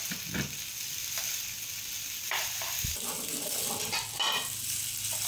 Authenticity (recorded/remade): recorded